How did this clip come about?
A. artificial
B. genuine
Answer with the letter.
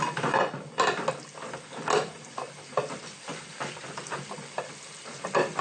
B